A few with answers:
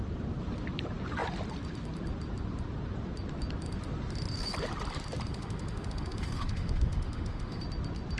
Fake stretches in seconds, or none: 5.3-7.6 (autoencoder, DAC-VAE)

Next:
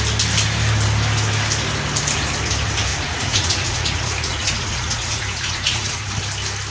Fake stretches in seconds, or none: 2.9-6.1 (vocoder, Vocos)

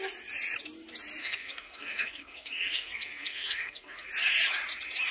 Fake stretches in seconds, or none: 1.2-4.1 (codec, SNAC)

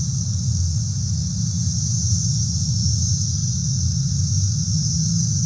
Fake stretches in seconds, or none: none

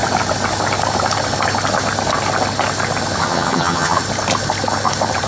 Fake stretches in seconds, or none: 3.2-4.0 (vocoder, HiFi-GAN)

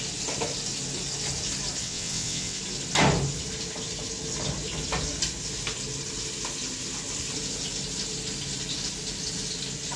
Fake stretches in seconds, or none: 1.8-2.6 (vocoder, WaveNeXt)